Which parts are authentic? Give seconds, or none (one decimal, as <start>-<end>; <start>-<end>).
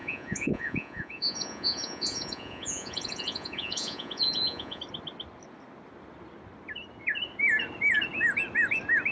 4.8-9.1